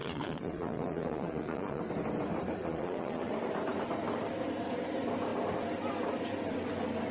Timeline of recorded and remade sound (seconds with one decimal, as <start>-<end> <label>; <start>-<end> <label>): 0.0-1.8 remade; 1.8-2.6 recorded; 2.6-3.3 remade; 3.3-7.1 recorded